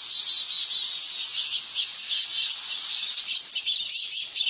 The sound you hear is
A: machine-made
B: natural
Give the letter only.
B